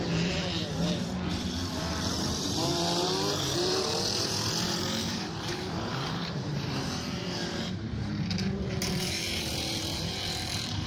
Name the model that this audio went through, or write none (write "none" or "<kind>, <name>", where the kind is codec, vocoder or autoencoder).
vocoder, BigVGAN v2